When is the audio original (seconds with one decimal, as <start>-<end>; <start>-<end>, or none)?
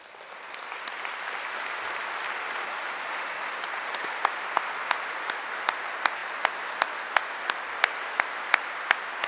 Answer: 0.0-9.3